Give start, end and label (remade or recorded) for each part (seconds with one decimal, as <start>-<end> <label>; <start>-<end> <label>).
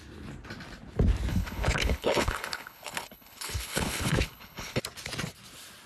0.0-1.3 recorded; 1.3-4.8 remade; 4.8-5.9 recorded